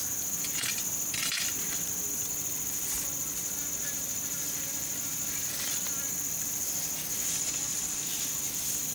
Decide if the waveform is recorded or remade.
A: recorded